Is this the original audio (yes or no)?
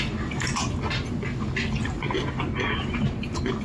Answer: yes